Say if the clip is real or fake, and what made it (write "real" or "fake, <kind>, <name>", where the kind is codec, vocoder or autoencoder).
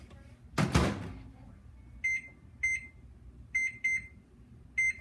real